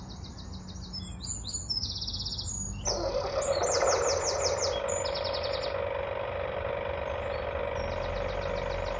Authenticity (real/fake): real